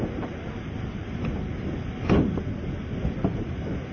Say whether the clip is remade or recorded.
recorded